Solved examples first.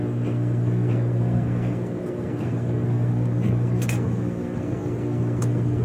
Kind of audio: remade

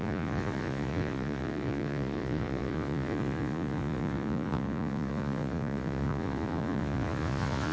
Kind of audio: remade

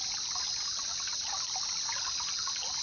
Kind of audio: recorded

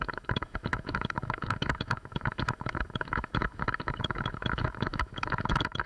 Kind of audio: remade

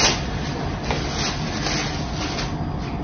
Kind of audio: recorded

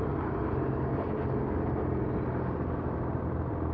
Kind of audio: recorded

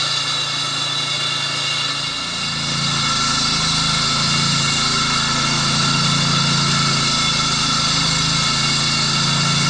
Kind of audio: recorded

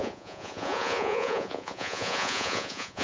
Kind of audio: remade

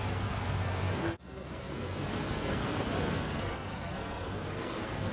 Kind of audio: remade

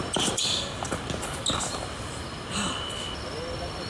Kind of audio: recorded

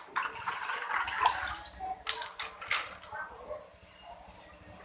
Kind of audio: recorded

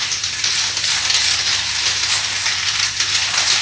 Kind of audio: recorded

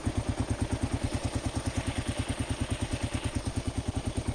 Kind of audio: recorded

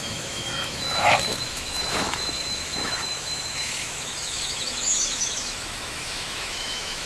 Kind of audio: remade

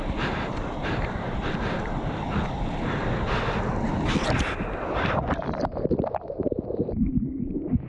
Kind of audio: recorded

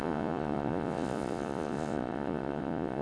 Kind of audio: remade